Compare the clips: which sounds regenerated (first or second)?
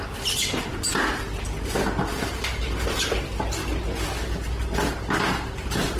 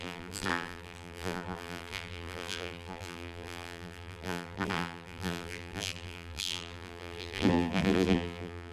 second